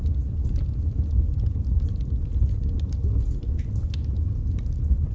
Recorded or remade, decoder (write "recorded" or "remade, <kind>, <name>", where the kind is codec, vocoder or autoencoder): recorded